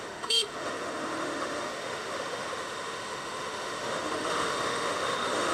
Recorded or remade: remade